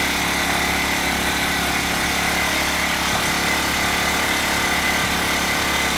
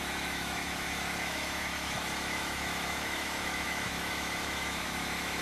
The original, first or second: first